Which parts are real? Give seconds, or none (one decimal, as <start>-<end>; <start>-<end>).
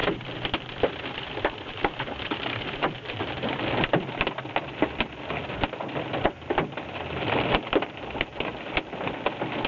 4.1-9.7